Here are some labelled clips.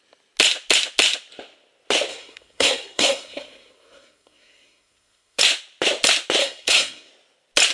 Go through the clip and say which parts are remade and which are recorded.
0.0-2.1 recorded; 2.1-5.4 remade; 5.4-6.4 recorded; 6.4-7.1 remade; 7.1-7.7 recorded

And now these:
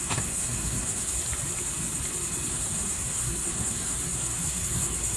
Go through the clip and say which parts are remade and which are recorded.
0.0-1.2 remade; 1.2-2.5 recorded; 2.5-5.2 remade